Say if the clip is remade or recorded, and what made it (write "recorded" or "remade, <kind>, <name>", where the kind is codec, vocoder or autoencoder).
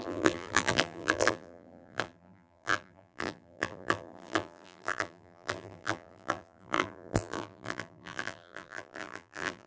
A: remade, vocoder, BigVGAN v2